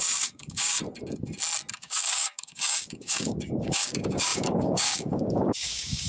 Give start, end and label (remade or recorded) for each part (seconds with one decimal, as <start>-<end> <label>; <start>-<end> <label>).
0.0-0.8 remade; 0.8-1.7 recorded; 1.7-6.1 remade